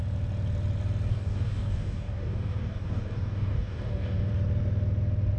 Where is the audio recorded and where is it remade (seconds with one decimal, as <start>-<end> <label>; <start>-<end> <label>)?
0.0-1.1 recorded; 1.1-4.3 remade; 4.3-5.4 recorded